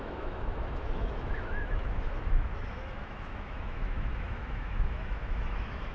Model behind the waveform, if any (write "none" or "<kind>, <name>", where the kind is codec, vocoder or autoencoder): autoencoder, DAC-VAE